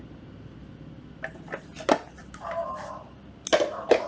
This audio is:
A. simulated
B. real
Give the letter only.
B